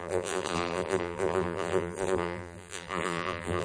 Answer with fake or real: fake